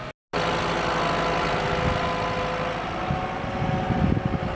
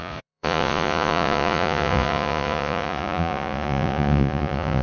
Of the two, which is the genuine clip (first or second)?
first